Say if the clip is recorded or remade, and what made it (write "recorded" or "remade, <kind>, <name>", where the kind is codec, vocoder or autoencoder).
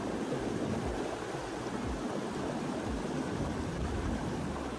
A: recorded